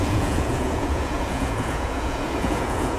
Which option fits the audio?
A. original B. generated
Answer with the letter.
B